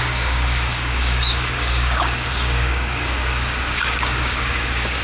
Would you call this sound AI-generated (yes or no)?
yes